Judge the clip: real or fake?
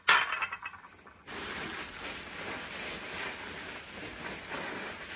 real